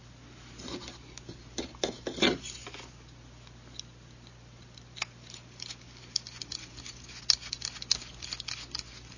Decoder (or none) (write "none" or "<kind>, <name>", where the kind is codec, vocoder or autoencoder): none